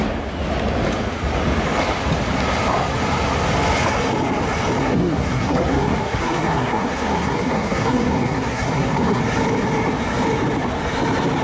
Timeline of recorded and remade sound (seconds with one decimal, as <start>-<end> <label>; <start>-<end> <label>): 0.0-4.8 recorded; 4.8-9.2 remade; 9.2-11.4 recorded